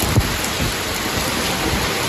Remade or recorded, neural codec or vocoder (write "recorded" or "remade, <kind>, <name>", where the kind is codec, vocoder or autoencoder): recorded